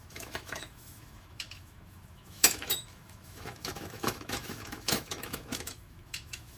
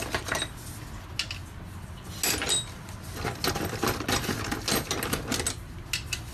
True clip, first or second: second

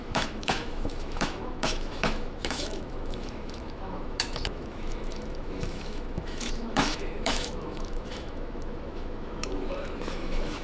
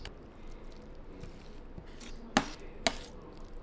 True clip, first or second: second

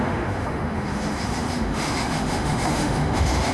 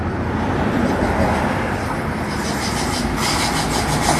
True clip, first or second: second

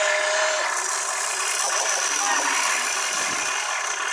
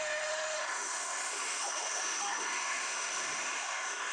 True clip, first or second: first